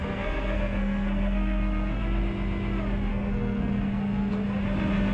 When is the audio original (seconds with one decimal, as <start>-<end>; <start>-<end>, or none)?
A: 2.0-3.1; 4.3-5.1